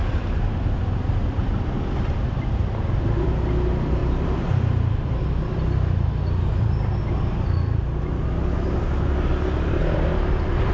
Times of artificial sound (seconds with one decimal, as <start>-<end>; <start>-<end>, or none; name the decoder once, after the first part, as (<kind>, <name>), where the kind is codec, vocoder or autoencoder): 0.0-3.3 (vocoder, BigVGAN v2); 4.0-6.1